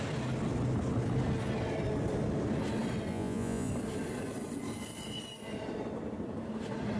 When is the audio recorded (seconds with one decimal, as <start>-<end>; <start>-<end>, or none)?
0.0-3.1; 3.7-7.0